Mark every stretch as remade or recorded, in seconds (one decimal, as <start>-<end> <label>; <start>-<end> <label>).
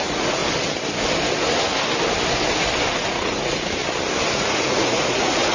0.0-0.4 remade; 0.4-2.9 recorded; 2.9-3.8 remade; 3.8-4.3 recorded; 4.3-5.5 remade